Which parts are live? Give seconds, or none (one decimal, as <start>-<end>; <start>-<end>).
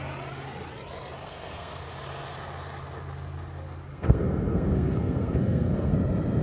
0.0-1.2; 1.8-3.9; 5.9-6.4